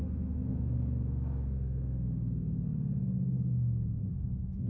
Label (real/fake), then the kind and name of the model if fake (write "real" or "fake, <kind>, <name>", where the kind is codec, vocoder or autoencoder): fake, codec, SNAC